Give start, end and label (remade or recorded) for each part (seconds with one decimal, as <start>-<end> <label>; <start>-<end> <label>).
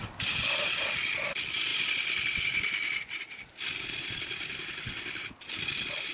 0.0-6.1 recorded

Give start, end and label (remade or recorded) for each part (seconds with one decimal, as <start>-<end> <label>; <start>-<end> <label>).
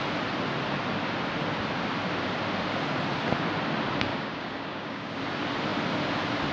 0.0-4.1 recorded; 4.1-5.2 remade; 5.2-6.5 recorded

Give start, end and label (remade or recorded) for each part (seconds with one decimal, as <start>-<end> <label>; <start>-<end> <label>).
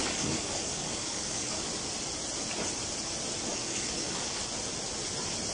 0.0-1.7 remade; 1.7-3.5 recorded; 3.5-4.4 remade; 4.4-5.5 recorded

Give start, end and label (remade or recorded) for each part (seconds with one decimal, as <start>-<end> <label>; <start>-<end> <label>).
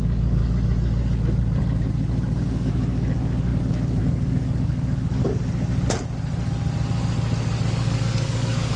0.0-0.4 remade; 0.4-2.4 recorded; 2.4-5.2 remade; 5.2-7.7 recorded; 7.7-8.8 remade